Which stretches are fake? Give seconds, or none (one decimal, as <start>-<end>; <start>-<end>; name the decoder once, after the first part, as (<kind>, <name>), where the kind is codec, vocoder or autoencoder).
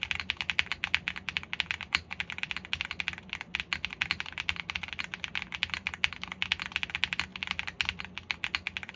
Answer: none